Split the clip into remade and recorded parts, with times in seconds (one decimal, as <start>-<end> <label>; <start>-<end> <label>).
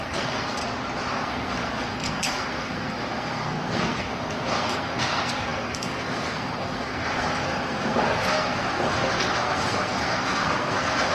0.0-0.6 remade; 0.6-1.1 recorded; 1.1-11.1 remade